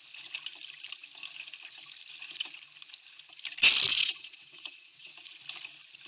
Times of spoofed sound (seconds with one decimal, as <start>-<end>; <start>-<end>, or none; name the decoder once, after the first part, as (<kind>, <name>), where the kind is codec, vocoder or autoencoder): 3.9-5.1 (vocoder, WaveNeXt)